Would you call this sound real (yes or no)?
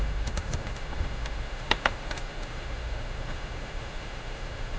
no